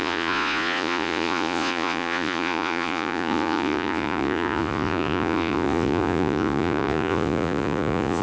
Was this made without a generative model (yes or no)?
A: no